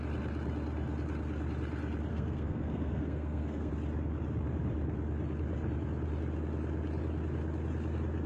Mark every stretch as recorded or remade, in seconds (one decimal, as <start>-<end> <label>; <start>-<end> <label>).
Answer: 0.0-2.1 recorded; 2.1-3.7 remade; 3.7-8.3 recorded